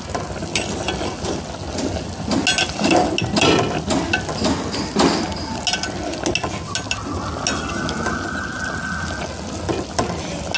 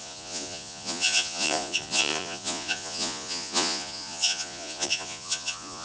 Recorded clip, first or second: first